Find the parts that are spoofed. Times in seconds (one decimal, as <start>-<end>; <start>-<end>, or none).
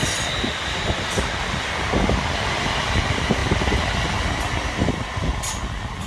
none